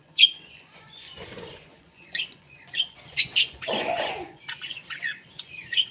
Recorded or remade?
remade